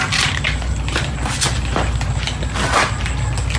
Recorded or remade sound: recorded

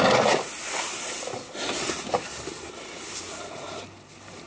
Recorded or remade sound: recorded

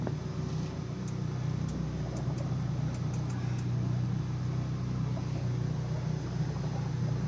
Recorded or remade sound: recorded